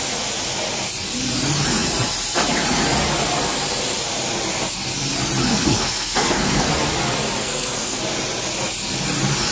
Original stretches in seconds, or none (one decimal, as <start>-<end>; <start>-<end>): 0.0-5.5; 6.7-7.4; 8.0-9.5